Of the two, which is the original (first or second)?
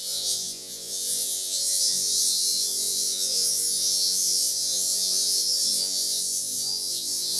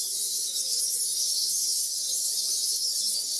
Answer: second